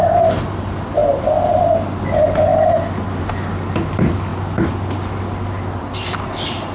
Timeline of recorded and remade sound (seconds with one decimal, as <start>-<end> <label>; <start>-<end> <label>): 0.0-6.7 recorded